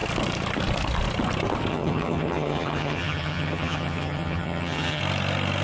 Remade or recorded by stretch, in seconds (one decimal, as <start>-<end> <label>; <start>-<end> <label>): 0.0-1.7 recorded; 1.7-5.0 remade; 5.0-5.6 recorded